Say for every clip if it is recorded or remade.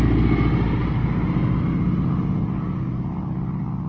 recorded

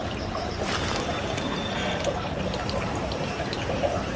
remade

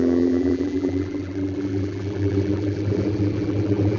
remade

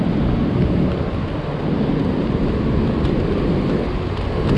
recorded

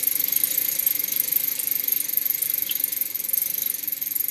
remade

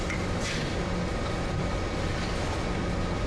recorded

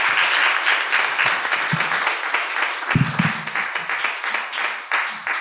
recorded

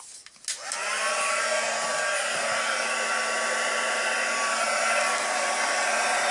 recorded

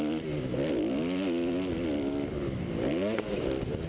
recorded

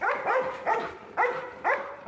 remade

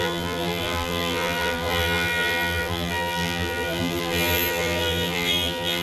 remade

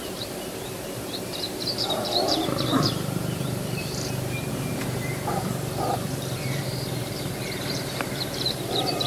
remade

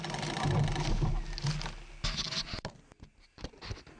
recorded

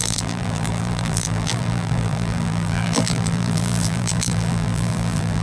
remade